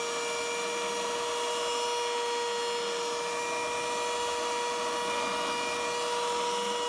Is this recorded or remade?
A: recorded